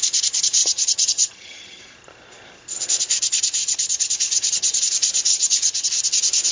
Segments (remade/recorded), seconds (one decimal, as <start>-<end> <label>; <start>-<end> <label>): 0.0-0.6 recorded; 0.6-1.8 remade; 1.8-3.6 recorded; 3.6-4.8 remade; 4.8-5.3 recorded; 5.3-5.9 remade; 5.9-6.5 recorded